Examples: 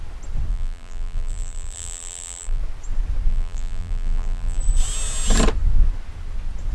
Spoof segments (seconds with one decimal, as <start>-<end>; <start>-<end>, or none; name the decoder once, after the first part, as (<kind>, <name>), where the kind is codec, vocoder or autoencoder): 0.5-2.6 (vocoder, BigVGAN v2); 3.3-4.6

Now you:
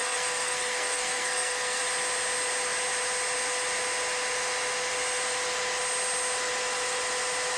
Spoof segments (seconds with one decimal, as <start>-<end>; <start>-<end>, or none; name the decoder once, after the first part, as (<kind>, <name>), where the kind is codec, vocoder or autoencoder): 0.0-1.8 (codec, SNAC)

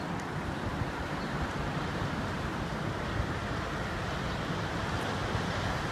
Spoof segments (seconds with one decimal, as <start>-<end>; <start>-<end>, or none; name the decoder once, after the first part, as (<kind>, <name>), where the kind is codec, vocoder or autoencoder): 0.7-3.7 (vocoder, BigVGAN v2)

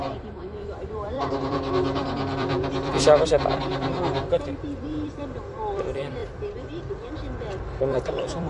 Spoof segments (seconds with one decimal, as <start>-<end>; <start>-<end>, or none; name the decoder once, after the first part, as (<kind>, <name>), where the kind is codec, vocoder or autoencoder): 0.0-8.5 (vocoder, BigVGAN v2)

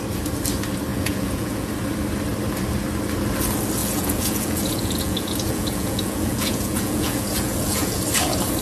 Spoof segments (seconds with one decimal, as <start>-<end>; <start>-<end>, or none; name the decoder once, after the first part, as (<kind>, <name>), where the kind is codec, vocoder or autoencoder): 0.9-1.7 (vocoder, Vocos); 3.8-8.0

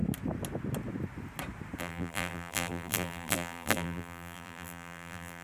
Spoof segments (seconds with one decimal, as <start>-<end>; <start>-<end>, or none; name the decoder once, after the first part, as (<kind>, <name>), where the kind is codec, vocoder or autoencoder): 1.8-5.4 (vocoder, BigVGAN v2)

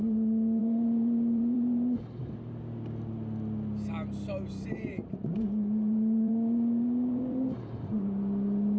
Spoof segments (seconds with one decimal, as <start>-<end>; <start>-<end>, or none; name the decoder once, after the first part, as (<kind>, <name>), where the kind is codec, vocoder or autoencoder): 0.6-2.2 (vocoder, BigVGAN v2); 4.9-8.0

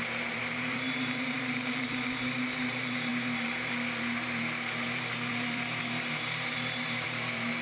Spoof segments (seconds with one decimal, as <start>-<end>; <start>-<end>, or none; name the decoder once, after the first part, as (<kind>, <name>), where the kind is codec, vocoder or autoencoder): 0.0-7.6 (vocoder, BigVGAN v2)